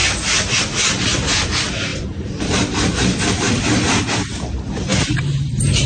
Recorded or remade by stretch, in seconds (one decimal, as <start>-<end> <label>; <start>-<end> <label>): 0.0-1.9 recorded; 1.9-3.6 remade; 3.6-4.9 recorded; 4.9-5.5 remade; 5.5-5.9 recorded